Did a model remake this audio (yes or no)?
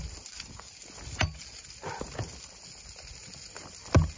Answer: no